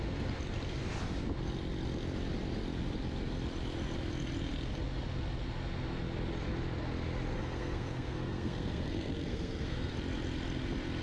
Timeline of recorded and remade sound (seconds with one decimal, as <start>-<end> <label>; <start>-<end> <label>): 0.0-7.3 recorded; 7.3-9.9 remade; 9.9-11.0 recorded